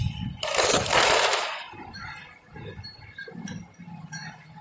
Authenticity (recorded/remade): recorded